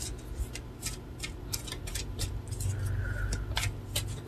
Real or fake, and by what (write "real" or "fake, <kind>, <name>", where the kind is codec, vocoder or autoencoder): real